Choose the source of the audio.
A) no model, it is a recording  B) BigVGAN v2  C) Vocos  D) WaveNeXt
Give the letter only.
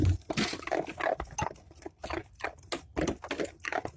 A